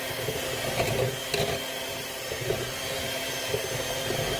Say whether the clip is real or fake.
real